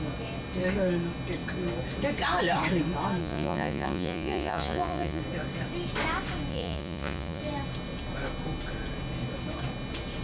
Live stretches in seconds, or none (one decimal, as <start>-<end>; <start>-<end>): 0.0-3.2; 5.2-6.5; 7.4-10.2

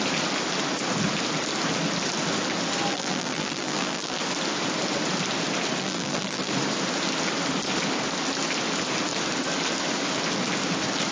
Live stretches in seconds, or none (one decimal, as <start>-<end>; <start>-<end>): 0.0-2.9; 4.2-5.8; 6.5-11.1

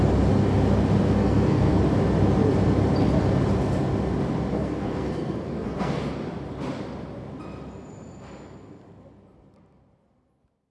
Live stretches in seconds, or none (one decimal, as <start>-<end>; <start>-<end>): 0.0-1.2; 1.8-4.5; 6.0-10.7